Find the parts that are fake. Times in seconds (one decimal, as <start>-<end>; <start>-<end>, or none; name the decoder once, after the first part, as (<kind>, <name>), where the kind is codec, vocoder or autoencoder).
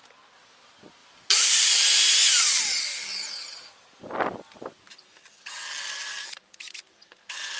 1.0-2.6 (vocoder, BigVGAN v2)